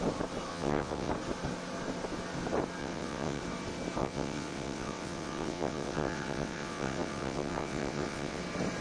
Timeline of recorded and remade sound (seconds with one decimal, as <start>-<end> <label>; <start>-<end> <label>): 0.0-0.5 recorded; 0.5-1.1 remade; 1.1-2.8 recorded; 2.8-3.4 remade; 3.4-4.0 recorded; 4.0-8.4 remade; 8.4-8.8 recorded